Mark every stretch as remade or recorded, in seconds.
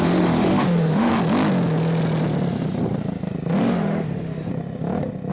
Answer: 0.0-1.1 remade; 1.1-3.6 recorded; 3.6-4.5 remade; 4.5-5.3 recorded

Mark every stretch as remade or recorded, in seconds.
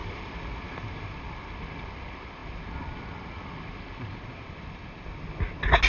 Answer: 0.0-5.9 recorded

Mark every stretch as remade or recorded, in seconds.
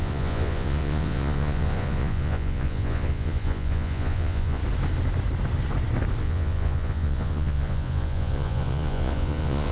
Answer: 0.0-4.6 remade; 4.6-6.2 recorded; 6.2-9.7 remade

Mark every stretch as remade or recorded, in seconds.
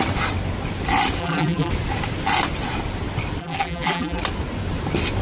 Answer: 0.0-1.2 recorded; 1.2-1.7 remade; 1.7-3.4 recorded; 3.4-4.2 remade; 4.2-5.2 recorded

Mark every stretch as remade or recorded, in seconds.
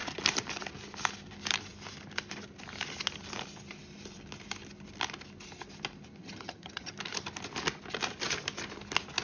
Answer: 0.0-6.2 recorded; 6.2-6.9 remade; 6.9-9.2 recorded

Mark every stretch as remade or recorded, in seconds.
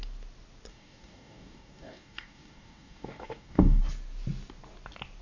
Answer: 0.0-0.7 recorded; 0.7-3.8 remade; 3.8-5.2 recorded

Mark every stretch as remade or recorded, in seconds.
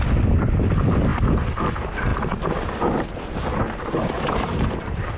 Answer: 0.0-5.2 recorded